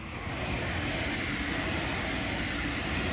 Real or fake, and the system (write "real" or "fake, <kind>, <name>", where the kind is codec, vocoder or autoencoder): real